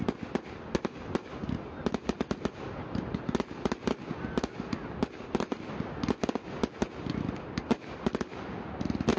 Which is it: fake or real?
real